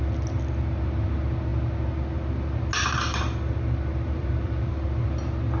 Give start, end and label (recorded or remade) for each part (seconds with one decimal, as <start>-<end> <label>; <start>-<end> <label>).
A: 0.0-3.9 recorded; 3.9-4.7 remade; 4.7-5.6 recorded